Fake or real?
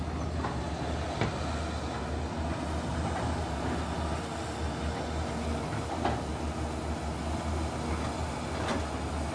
real